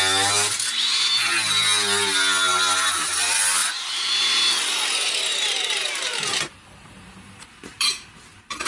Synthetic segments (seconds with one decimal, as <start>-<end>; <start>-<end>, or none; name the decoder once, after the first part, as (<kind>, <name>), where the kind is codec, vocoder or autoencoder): 5.3-8.1 (vocoder, BigVGAN v2)